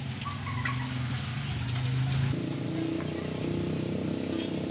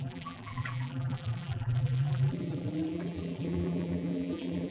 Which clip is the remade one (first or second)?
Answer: second